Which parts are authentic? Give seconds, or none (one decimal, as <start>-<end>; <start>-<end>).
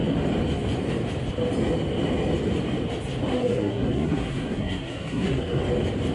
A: 0.0-3.3; 5.6-6.1